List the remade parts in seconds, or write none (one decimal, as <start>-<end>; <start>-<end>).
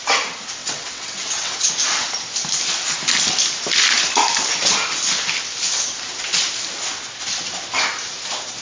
0.6-1.7